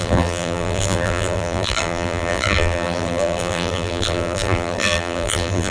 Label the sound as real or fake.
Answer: fake